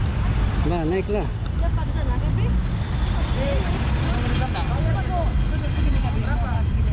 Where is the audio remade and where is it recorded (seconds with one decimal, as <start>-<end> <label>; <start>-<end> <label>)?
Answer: 0.0-6.9 recorded